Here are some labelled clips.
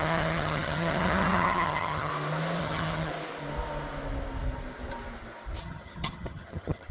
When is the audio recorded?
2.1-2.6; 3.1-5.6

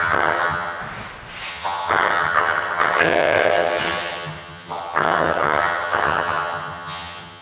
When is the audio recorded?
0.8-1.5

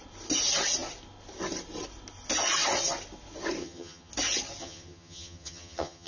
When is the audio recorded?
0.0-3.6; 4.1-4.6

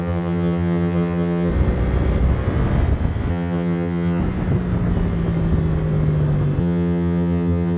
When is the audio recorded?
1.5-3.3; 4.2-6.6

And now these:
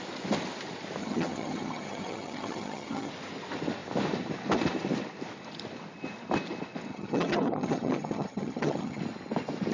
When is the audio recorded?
0.0-1.0; 3.1-6.9; 9.0-9.7

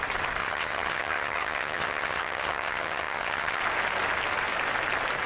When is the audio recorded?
0.0-0.4; 3.6-5.3

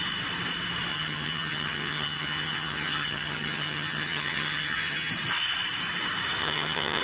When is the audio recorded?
0.0-0.9; 5.1-6.4

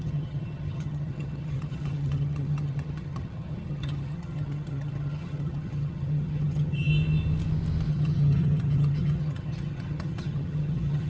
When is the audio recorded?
6.9-7.9